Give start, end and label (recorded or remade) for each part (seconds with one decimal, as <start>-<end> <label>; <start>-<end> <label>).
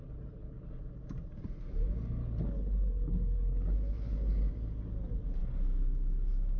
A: 0.0-0.8 remade; 0.8-2.2 recorded; 2.2-4.5 remade; 4.5-6.6 recorded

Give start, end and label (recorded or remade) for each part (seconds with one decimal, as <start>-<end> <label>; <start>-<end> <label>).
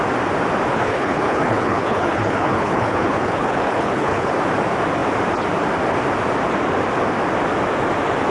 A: 0.0-0.7 recorded; 0.7-4.3 remade; 4.3-8.3 recorded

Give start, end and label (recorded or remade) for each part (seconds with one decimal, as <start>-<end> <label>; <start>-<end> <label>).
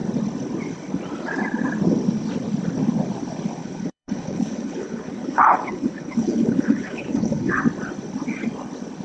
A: 0.0-3.6 recorded; 3.6-7.6 remade; 7.6-9.0 recorded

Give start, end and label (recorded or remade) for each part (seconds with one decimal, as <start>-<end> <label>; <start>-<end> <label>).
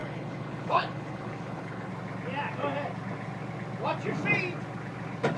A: 0.0-1.9 remade; 1.9-5.4 recorded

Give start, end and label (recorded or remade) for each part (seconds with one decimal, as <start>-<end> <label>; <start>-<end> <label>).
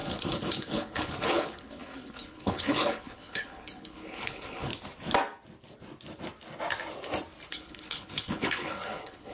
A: 0.0-4.7 remade; 4.7-7.5 recorded; 7.5-9.3 remade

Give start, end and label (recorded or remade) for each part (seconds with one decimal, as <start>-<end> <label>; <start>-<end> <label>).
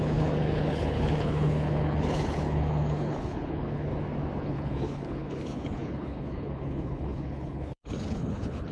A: 0.0-3.9 remade; 3.9-4.4 recorded; 4.4-8.7 remade